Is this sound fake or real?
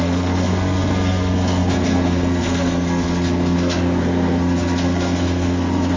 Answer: fake